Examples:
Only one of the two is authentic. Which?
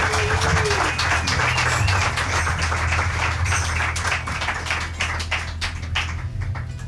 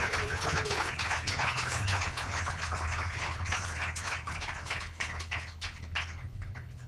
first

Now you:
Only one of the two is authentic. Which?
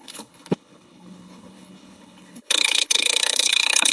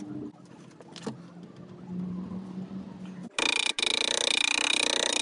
second